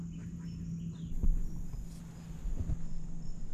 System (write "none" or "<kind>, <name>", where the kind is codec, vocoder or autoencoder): none